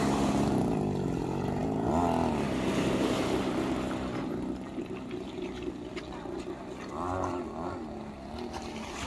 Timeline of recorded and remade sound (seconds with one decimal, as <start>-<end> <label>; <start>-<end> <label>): 0.0-9.1 recorded